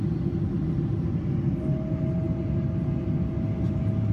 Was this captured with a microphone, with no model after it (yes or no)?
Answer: yes